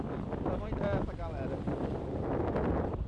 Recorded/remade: recorded